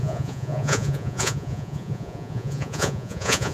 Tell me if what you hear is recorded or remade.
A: remade